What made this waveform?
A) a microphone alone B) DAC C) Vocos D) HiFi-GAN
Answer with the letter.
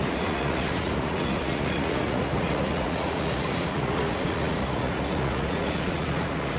C